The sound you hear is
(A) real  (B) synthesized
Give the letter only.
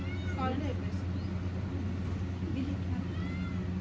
A